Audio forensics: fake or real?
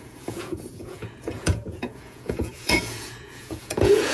fake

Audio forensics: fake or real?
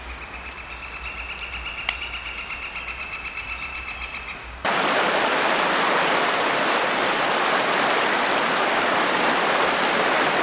real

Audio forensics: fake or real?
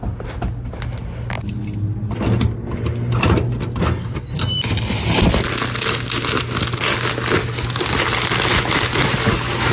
real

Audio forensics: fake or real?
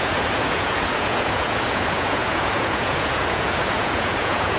fake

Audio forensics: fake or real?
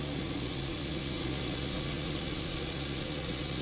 fake